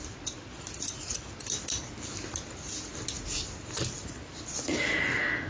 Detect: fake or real real